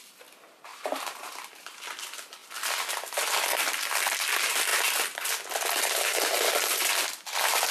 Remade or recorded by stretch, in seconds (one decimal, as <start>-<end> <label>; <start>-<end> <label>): 0.0-0.7 recorded; 0.7-1.8 remade; 1.8-7.7 recorded